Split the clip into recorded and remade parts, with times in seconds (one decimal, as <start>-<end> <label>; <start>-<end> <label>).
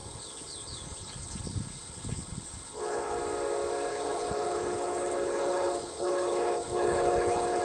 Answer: 0.0-3.2 remade; 3.2-3.9 recorded; 3.9-7.6 remade